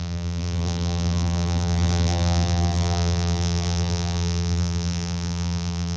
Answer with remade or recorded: remade